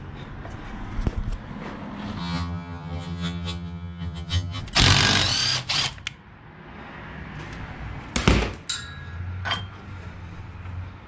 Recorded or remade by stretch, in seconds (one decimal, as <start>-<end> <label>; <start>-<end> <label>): 0.0-2.2 recorded; 2.2-4.6 remade; 4.6-11.1 recorded